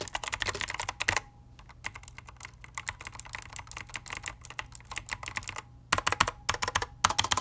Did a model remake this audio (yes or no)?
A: no